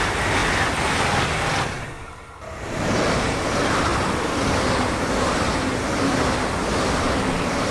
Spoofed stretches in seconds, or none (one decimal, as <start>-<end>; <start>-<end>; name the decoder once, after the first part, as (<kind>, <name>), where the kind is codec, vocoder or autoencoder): 0.0-0.4 (vocoder, BigVGAN v2); 2.6-3.9; 7.0-7.7